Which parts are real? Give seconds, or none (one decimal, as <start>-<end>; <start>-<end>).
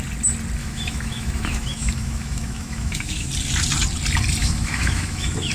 0.0-0.6; 3.3-4.4